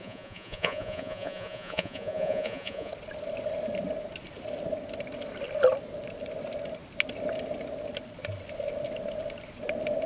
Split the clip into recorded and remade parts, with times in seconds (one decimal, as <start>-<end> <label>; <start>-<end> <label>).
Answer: 0.0-2.9 remade; 2.9-10.1 recorded